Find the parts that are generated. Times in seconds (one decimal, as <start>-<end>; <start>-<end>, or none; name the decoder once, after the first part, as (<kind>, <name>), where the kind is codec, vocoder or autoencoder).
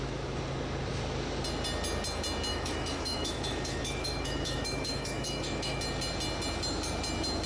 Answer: 2.5-5.8 (autoencoder, DAC-VAE)